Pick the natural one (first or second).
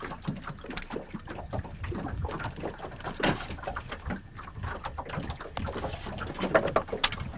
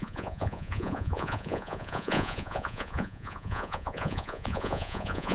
first